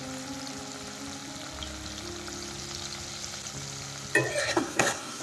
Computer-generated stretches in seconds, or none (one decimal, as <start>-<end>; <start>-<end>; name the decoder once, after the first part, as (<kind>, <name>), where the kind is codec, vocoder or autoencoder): 4.4-5.2 (codec, SNAC)